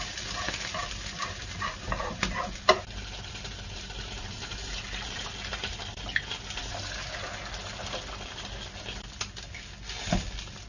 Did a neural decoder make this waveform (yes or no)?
no